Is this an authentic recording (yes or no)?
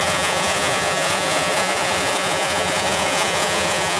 no